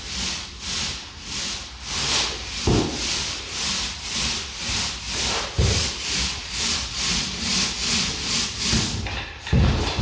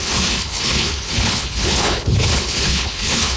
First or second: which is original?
first